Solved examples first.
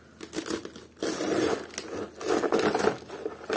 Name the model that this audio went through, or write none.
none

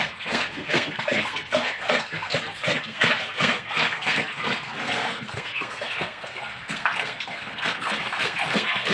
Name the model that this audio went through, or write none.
codec, SNAC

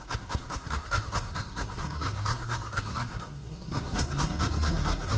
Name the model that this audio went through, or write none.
codec, SNAC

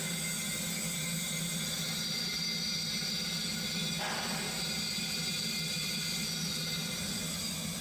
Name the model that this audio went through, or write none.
none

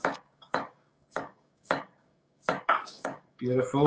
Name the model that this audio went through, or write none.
codec, DAC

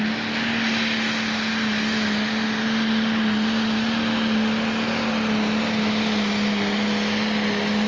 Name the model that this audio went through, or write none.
none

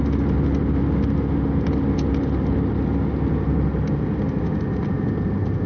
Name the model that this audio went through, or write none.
none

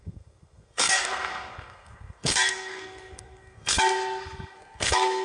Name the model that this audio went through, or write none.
codec, SNAC